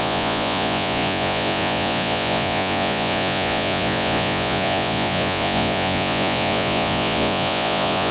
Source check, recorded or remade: remade